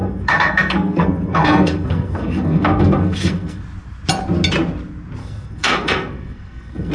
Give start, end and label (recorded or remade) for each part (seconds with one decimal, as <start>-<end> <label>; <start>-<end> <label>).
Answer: 0.0-3.6 remade; 3.6-5.2 recorded; 5.2-6.9 remade